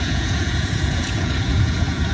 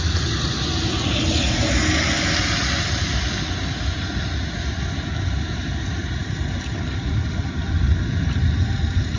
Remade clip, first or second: first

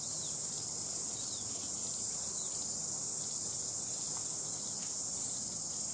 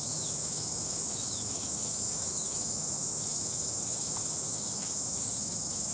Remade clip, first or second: second